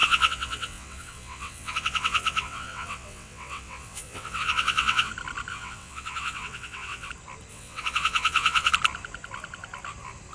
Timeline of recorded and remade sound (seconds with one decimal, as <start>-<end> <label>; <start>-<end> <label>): 0.0-5.1 remade; 5.1-5.5 recorded; 5.5-7.1 remade; 7.1-7.5 recorded; 7.5-8.7 remade; 8.7-10.3 recorded